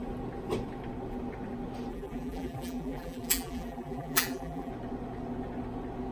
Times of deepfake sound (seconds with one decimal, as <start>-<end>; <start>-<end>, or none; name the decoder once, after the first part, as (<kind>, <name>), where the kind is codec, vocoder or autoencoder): 1.9-4.7 (vocoder, BigVGAN v2)